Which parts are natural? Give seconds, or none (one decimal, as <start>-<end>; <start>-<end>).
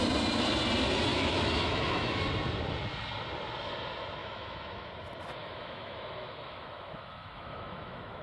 0.0-1.1; 2.2-4.2; 4.9-5.4